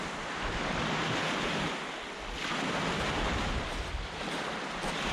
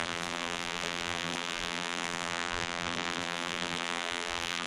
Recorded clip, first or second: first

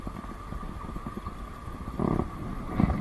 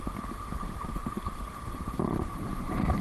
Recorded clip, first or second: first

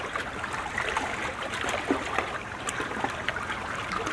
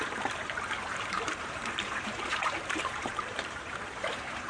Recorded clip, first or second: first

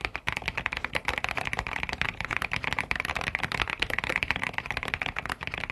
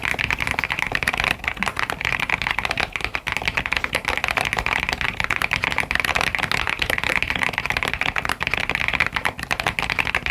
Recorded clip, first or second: second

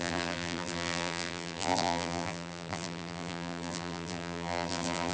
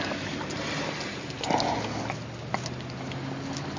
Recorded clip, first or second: second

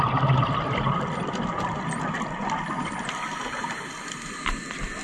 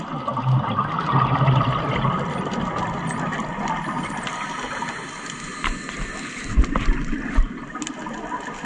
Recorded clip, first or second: second